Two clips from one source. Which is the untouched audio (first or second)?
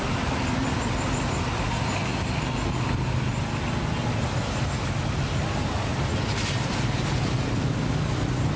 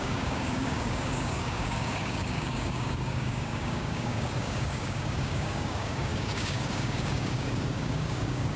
first